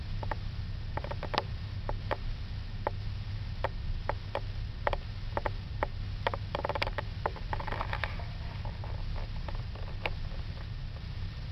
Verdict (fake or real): real